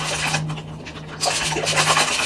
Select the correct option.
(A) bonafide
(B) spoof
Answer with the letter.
A